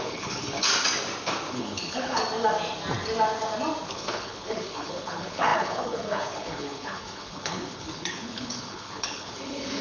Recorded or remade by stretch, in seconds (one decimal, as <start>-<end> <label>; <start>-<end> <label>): 0.0-0.7 remade; 0.7-1.5 recorded; 1.5-2.2 remade; 2.2-3.9 recorded; 3.9-9.8 remade